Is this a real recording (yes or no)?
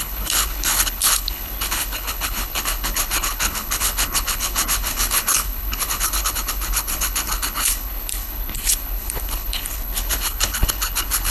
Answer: no